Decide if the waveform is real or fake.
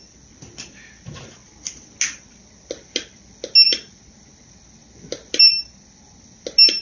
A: real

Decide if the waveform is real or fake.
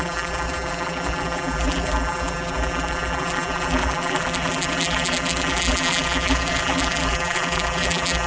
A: fake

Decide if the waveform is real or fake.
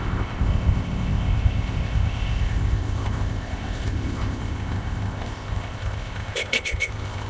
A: fake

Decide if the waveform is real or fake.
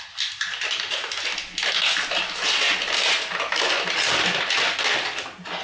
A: real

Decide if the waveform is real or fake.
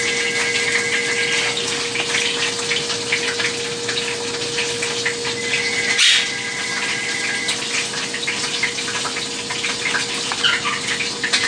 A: real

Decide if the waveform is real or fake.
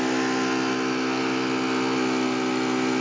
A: real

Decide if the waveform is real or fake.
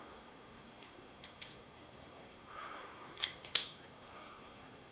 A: fake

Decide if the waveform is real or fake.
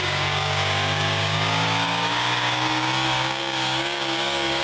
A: fake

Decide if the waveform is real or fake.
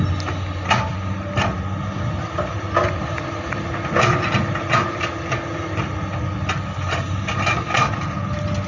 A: real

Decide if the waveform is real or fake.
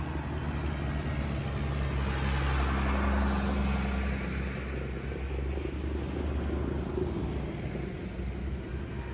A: real